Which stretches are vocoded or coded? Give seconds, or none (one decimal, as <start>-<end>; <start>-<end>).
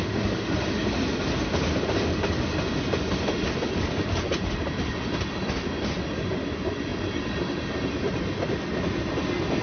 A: none